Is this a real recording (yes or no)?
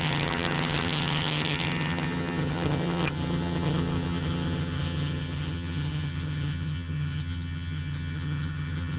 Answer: no